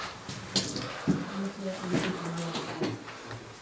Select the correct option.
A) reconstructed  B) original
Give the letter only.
B